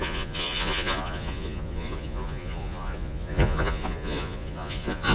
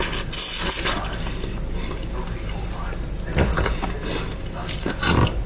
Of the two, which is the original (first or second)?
second